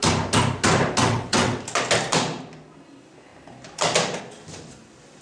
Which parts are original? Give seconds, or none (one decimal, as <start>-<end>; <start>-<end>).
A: 0.0-1.0; 1.6-5.2